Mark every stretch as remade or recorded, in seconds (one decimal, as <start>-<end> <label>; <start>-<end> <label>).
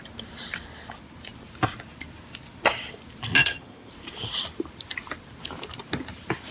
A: 0.0-3.4 recorded; 3.4-3.9 remade; 3.9-6.5 recorded